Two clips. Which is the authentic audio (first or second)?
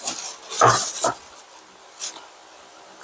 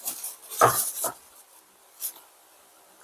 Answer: first